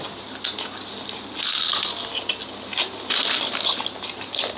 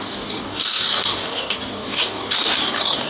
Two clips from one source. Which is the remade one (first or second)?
second